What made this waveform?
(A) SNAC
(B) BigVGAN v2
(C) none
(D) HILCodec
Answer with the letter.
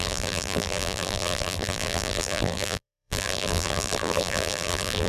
B